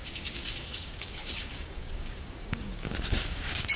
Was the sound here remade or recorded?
remade